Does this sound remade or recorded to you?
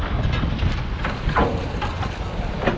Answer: recorded